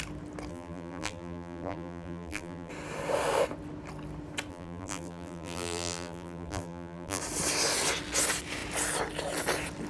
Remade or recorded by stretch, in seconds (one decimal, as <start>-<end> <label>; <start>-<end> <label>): 0.0-0.5 recorded; 0.5-2.7 remade; 2.7-4.5 recorded; 4.5-7.2 remade; 7.2-9.9 recorded